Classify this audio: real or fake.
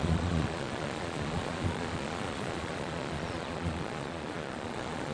fake